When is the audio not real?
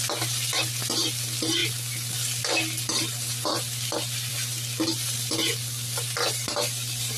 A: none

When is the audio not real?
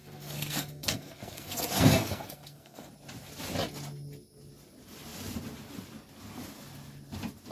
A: 0.0-2.9 (codec, SNAC)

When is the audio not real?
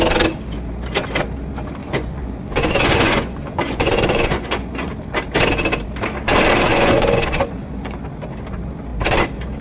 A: 1.8-4.9 (vocoder, Vocos); 6.7-8.0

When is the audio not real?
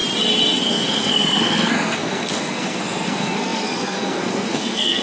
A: 0.7-5.0 (codec, SNAC)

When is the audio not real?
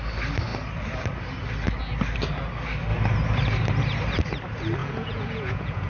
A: 4.8-5.9 (vocoder, Vocos)